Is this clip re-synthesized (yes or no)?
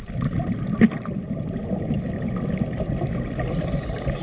no